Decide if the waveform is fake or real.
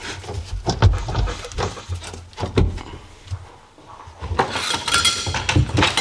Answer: real